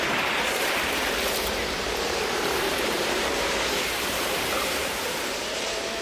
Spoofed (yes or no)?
yes